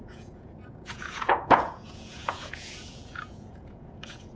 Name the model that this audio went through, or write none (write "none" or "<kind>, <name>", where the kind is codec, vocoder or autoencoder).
vocoder, Vocos